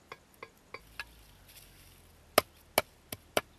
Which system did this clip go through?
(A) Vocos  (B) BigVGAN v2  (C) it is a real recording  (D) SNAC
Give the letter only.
C